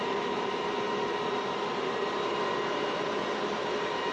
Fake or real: real